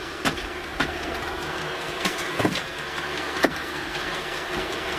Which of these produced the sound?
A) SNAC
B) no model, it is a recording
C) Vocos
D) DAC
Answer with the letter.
A